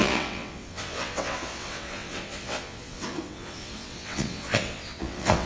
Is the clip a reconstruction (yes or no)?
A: yes